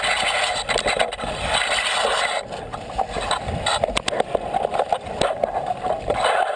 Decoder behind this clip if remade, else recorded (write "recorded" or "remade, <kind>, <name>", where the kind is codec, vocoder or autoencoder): recorded